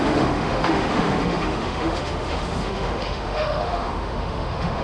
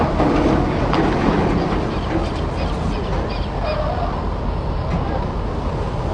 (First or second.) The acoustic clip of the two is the second